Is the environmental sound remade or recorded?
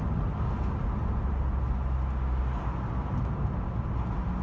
recorded